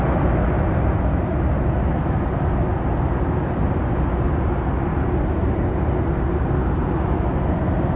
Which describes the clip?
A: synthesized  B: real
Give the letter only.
B